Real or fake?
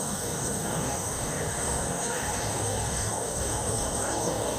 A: fake